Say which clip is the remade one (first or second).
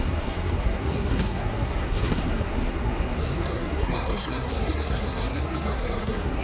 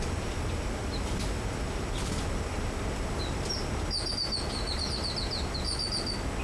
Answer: first